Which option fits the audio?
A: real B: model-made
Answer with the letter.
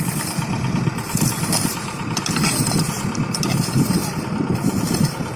A